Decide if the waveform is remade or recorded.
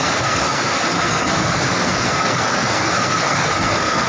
remade